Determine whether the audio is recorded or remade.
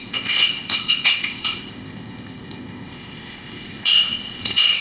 remade